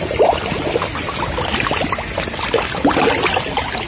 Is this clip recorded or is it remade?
recorded